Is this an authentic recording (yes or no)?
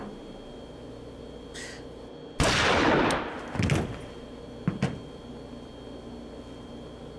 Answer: yes